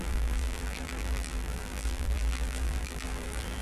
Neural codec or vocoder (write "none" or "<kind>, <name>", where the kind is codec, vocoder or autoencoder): vocoder, BigVGAN v2